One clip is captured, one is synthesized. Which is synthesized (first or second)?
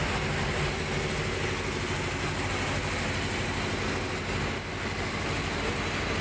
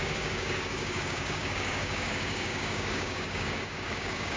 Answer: second